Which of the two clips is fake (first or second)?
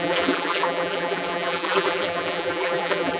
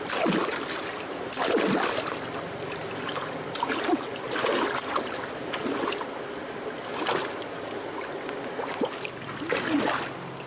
first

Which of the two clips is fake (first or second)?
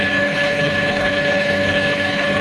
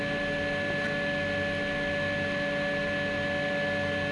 first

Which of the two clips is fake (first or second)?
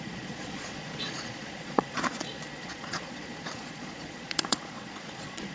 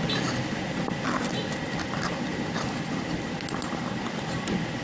first